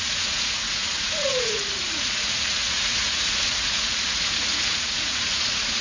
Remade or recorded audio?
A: remade